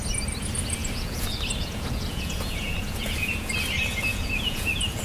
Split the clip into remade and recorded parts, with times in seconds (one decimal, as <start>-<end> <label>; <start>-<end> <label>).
0.0-0.8 recorded; 0.8-3.5 remade; 3.5-3.9 recorded; 3.9-5.0 remade